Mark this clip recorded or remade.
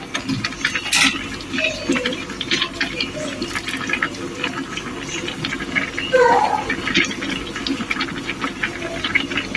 recorded